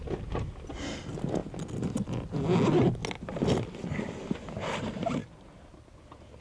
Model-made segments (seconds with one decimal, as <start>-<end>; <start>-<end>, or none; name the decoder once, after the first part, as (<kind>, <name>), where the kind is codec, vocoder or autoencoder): none